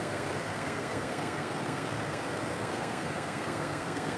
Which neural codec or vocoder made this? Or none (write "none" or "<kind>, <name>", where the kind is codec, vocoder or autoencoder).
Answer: codec, SNAC